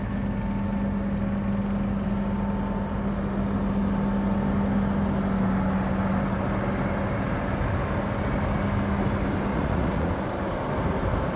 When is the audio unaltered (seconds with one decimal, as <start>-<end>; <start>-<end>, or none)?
0.0-9.5; 10.1-11.4

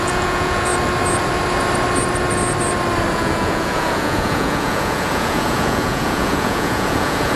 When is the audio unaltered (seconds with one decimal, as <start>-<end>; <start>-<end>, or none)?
0.7-3.1

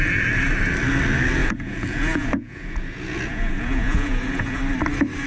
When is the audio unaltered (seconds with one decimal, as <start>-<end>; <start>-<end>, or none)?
0.0-1.4; 4.6-5.3

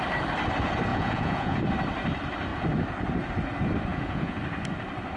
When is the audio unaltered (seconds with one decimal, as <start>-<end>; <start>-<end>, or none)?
0.0-0.9; 1.6-3.9; 4.4-5.2

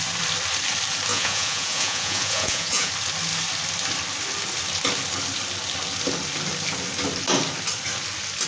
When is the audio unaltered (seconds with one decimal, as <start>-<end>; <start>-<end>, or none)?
0.0-1.1; 2.9-8.5

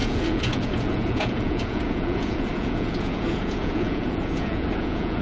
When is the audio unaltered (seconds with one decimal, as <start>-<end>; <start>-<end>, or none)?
none